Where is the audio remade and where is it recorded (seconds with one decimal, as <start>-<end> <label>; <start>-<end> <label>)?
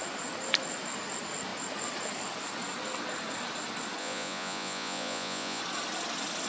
0.0-4.0 recorded; 4.0-5.6 remade; 5.6-6.5 recorded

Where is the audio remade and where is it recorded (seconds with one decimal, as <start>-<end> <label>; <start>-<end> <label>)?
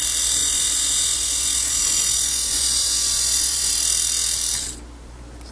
0.0-0.4 recorded; 0.4-3.7 remade; 3.7-5.5 recorded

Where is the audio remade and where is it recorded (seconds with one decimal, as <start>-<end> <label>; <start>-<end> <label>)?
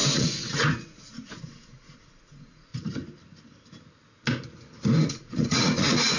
0.0-2.7 remade; 2.7-5.1 recorded; 5.1-6.2 remade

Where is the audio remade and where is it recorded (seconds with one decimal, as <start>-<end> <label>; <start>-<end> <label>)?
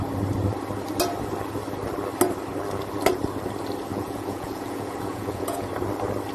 0.0-3.9 recorded; 3.9-5.7 remade; 5.7-6.3 recorded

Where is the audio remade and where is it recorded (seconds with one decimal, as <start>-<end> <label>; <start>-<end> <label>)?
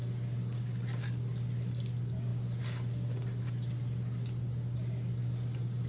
0.0-5.9 recorded